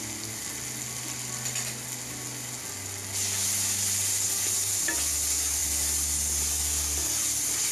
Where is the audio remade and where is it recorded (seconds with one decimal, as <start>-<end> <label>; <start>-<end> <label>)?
0.0-7.7 recorded